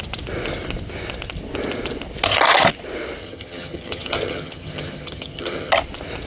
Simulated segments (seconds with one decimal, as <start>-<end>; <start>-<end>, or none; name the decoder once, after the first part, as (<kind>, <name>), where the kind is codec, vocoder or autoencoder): 3.2-5.7 (vocoder, HiFi-GAN)